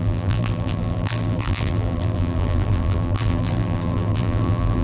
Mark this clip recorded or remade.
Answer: remade